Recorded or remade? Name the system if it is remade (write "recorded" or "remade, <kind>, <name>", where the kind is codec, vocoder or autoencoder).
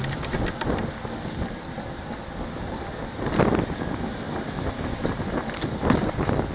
recorded